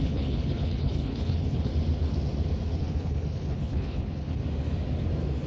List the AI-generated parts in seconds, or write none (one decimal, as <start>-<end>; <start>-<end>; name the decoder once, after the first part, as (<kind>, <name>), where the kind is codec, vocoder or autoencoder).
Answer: 0.0-1.7 (codec, HILCodec); 2.8-4.4

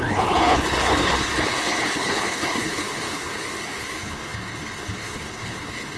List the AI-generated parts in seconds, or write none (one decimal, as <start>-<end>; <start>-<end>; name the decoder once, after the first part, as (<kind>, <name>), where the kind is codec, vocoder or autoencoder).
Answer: 0.0-6.0 (codec, HILCodec)

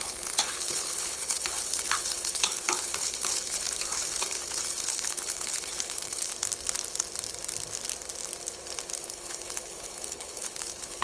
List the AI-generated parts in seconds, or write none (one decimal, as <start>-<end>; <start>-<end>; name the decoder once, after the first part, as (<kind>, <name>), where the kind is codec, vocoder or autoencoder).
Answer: 0.0-6.3 (codec, HILCodec); 9.0-11.0